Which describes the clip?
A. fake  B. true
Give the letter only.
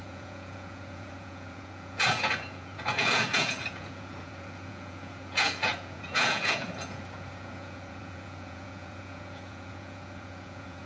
A